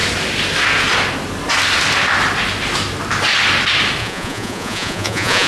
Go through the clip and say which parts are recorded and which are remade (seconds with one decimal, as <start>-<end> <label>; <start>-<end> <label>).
0.0-4.0 recorded; 4.0-5.5 remade

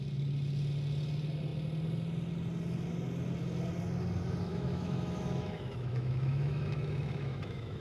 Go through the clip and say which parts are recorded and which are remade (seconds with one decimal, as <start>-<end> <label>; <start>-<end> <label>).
0.0-4.5 recorded; 4.5-7.8 remade